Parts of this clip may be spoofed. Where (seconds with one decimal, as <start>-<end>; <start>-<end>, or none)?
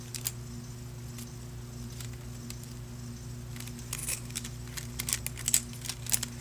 none